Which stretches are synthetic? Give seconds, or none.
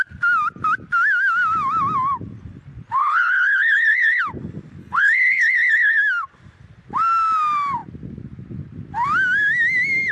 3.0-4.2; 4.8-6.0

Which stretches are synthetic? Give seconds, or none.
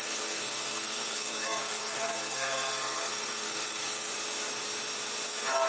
0.0-4.1; 5.3-5.7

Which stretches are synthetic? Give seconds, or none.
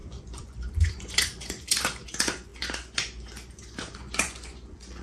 0.0-5.0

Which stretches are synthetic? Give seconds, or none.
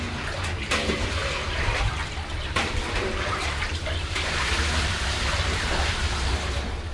1.2-5.3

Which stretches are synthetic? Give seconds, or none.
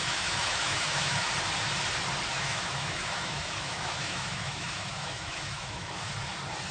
0.0-1.3; 2.3-6.1